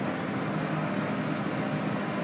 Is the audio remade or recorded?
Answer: recorded